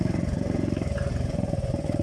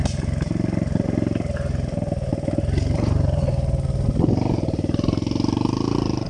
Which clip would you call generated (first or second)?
first